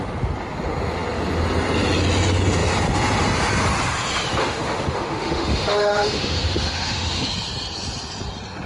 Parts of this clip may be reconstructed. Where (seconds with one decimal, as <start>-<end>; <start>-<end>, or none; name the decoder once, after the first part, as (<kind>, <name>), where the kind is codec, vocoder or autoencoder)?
4.4-7.3 (autoencoder, DAC-VAE)